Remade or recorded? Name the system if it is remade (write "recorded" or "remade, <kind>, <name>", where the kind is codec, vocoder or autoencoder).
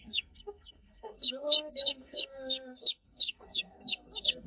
remade, codec, SNAC